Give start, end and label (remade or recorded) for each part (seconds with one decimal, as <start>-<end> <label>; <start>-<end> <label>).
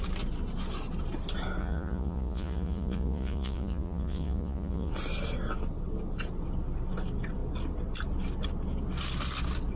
0.0-1.6 recorded; 1.6-4.9 remade; 4.9-9.8 recorded